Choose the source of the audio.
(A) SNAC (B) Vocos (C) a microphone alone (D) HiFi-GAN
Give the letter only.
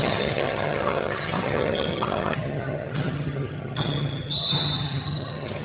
D